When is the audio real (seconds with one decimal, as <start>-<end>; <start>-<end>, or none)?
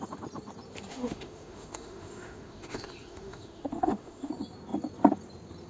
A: 0.0-0.9; 4.3-5.7